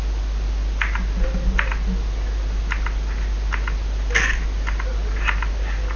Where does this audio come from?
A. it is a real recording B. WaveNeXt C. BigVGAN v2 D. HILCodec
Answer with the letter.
A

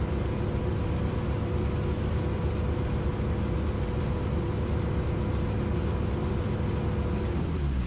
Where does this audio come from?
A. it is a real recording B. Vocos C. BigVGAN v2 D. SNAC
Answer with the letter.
A